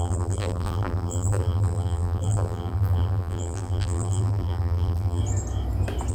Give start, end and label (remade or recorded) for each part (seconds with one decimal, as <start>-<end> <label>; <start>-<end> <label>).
0.0-5.2 remade; 5.2-6.1 recorded